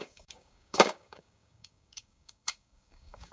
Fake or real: fake